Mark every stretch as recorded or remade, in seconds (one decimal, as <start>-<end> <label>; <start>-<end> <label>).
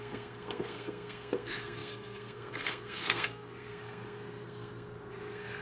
0.0-5.6 remade